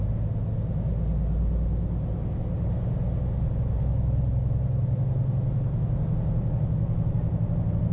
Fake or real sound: real